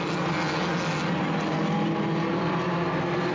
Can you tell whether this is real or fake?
real